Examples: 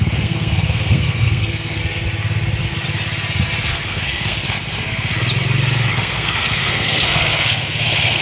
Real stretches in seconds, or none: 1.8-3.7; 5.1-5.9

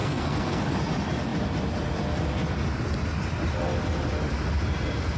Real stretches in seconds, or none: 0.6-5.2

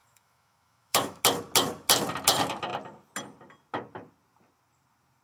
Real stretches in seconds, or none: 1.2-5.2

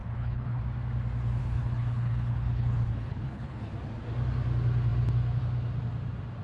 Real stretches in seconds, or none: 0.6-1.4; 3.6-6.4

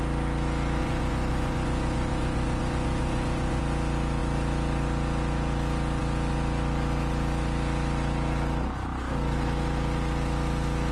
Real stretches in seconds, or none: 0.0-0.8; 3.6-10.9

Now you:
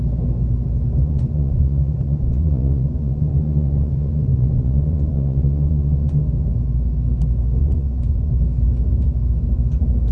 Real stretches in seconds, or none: 0.0-1.0; 6.2-7.6; 8.3-10.1

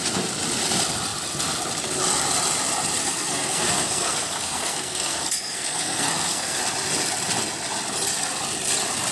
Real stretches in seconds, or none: 0.0-3.0; 6.6-9.1

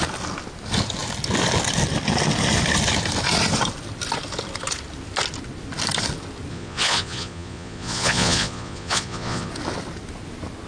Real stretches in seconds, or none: 0.0-6.5; 9.5-10.7